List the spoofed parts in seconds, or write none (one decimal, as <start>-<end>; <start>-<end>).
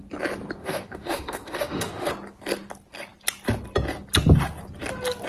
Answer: 0.6-2.1